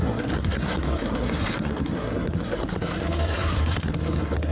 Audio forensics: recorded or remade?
remade